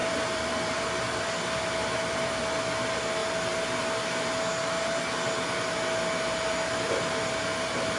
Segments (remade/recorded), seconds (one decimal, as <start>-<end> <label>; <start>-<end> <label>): 0.0-2.6 remade; 2.6-8.0 recorded